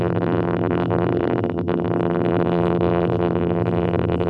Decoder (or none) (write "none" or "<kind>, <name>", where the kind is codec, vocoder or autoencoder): vocoder, BigVGAN v2